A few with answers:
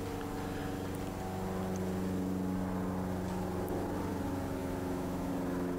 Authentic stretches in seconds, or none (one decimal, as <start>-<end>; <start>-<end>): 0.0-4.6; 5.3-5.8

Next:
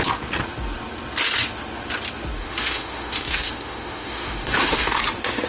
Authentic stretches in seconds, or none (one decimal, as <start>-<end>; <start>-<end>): 0.0-2.4; 5.0-5.5

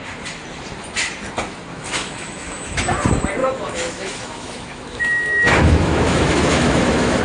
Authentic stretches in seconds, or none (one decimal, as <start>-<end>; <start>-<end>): 0.0-1.7; 2.8-3.4

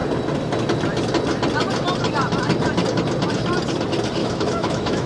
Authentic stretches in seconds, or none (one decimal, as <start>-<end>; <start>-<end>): 0.0-4.2

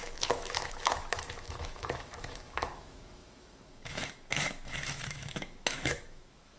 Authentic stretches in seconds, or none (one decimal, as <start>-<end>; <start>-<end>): none